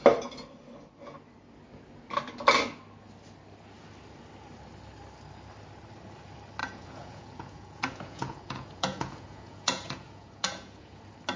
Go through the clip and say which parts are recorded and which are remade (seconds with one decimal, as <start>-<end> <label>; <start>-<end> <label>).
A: 0.0-6.6 recorded; 6.6-11.0 remade; 11.0-11.4 recorded